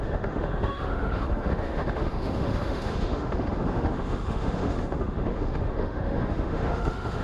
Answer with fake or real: fake